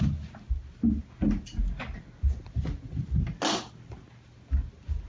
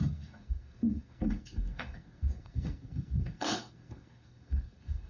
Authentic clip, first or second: first